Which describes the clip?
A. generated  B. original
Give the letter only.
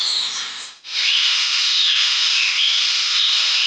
A